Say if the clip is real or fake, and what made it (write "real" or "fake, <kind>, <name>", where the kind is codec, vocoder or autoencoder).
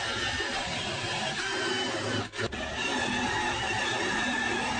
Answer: real